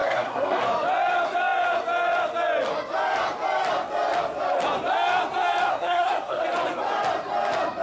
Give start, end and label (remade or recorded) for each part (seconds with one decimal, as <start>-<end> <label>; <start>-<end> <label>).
0.0-0.6 remade; 0.6-5.7 recorded; 5.7-6.4 remade; 6.4-7.8 recorded